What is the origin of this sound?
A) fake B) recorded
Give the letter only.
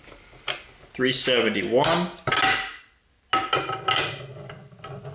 B